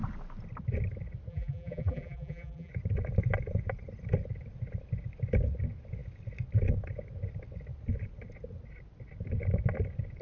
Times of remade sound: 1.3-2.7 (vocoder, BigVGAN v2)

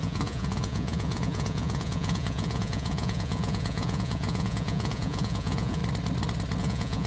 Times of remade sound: 0.0-5.8 (vocoder, Vocos); 6.6-7.1

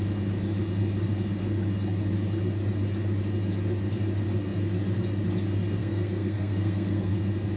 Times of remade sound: 5.8-7.1 (codec, SNAC)